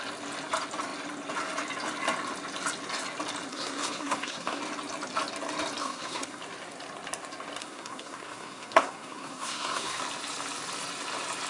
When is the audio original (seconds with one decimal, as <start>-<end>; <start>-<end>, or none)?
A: 0.0-3.5; 4.6-5.8; 6.4-7.6; 10.0-11.5